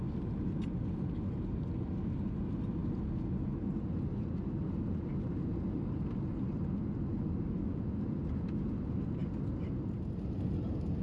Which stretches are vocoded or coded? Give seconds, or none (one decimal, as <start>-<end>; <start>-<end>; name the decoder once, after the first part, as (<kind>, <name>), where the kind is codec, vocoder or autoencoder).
none